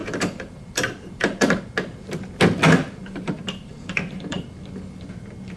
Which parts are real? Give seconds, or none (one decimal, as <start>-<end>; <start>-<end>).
1.6-3.0; 4.4-5.6